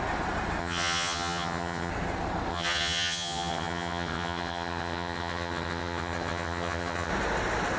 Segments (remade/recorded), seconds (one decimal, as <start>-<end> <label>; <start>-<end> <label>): 0.0-0.6 recorded; 0.6-1.9 remade; 1.9-2.5 recorded; 2.5-7.1 remade; 7.1-7.8 recorded